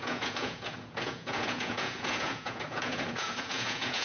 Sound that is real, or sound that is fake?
fake